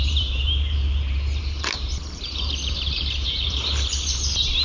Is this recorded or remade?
remade